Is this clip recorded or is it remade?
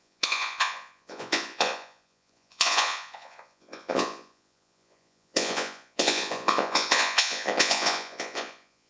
remade